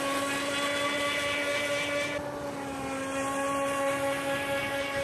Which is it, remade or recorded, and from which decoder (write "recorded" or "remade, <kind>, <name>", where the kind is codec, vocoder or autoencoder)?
recorded